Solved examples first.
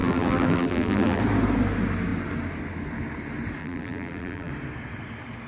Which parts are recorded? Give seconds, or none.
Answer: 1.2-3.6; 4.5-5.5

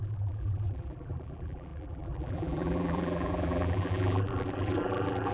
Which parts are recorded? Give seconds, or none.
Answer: none

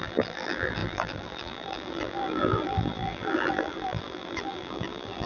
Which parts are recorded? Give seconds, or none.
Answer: none

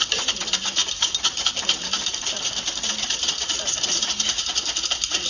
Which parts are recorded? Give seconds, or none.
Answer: 0.0-0.8; 3.7-5.3

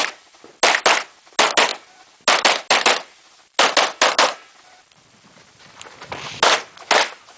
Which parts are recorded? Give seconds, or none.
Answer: 0.5-7.4

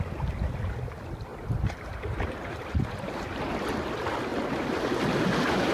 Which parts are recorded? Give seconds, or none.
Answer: 0.0-1.3; 3.4-5.7